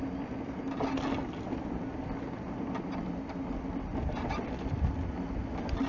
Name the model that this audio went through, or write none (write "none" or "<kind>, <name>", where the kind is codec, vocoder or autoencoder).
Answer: none